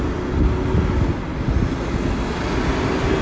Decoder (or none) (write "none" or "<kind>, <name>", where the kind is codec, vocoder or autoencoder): none